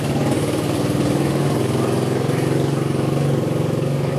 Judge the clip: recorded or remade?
remade